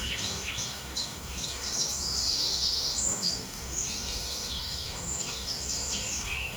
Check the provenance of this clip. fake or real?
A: fake